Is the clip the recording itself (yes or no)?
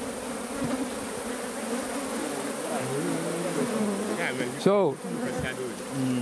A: yes